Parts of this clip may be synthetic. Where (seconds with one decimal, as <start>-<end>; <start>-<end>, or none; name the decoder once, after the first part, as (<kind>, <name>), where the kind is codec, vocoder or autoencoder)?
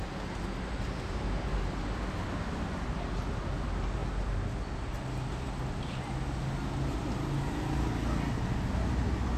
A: none